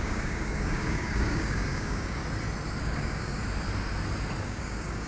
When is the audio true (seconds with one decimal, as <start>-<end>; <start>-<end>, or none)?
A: 2.2-2.8; 3.4-4.4